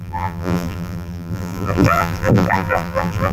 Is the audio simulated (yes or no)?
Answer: yes